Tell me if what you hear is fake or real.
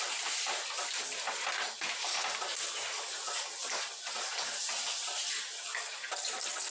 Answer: real